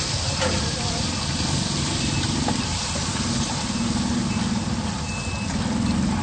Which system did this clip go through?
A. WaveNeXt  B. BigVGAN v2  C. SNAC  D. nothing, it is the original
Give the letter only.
D